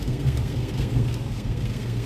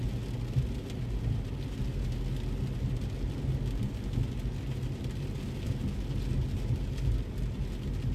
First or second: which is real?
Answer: second